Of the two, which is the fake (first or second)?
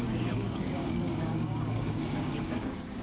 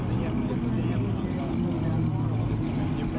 first